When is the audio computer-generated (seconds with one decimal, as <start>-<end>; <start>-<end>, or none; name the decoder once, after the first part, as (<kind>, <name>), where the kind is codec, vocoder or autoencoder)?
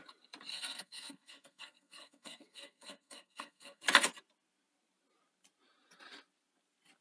0.5-3.8 (codec, SNAC)